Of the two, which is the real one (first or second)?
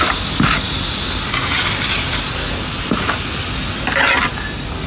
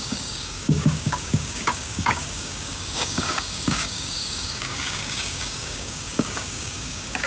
first